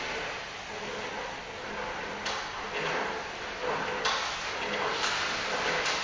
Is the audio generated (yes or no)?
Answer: no